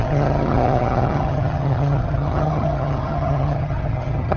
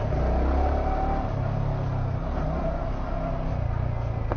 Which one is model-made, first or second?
first